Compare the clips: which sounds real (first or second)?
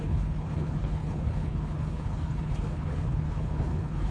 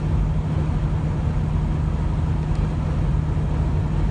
second